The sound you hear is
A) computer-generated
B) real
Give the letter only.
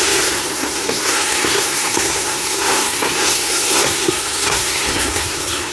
A